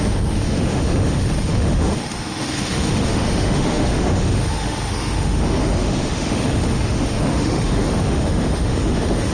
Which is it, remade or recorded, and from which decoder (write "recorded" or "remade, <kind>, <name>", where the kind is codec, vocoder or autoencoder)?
remade, autoencoder, DAC-VAE